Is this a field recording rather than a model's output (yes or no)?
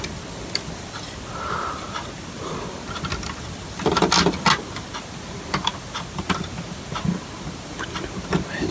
yes